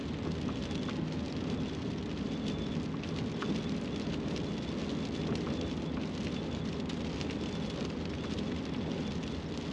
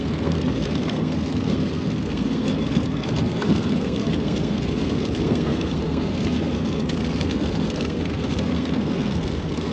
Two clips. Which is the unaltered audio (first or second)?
first